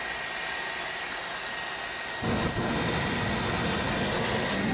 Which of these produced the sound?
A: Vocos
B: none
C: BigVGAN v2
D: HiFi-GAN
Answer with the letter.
B